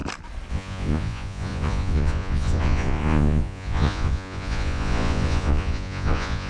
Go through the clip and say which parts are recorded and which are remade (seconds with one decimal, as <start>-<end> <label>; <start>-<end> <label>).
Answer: 0.0-0.5 recorded; 0.5-6.5 remade